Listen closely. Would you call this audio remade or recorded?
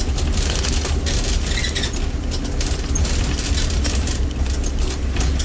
recorded